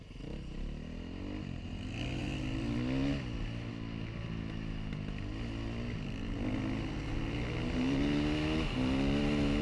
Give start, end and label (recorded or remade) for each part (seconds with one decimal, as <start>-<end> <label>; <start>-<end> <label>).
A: 0.0-9.6 recorded